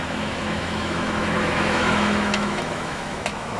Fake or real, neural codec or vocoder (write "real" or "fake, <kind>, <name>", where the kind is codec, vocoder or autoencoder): fake, autoencoder, DAC-VAE